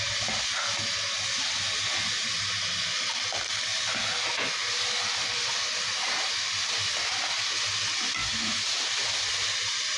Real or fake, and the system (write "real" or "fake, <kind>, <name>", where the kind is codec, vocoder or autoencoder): real